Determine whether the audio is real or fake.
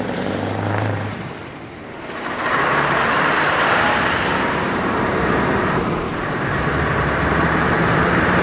fake